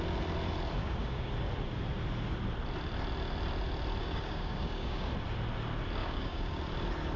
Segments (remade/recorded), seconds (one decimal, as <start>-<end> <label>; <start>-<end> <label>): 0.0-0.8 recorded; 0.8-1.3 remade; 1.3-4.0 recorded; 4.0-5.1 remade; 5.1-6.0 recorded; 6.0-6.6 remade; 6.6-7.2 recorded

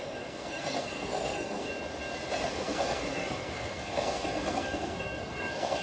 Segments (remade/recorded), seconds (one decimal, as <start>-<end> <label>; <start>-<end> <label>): 0.0-1.7 remade; 1.7-2.5 recorded; 2.5-5.8 remade

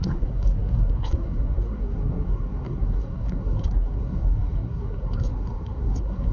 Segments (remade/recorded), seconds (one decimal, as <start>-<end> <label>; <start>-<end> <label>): 0.0-6.3 remade